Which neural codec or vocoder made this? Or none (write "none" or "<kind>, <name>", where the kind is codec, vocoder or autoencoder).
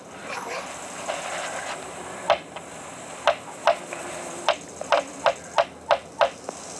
none